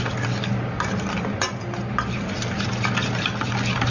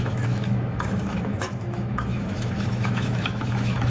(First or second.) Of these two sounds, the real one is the first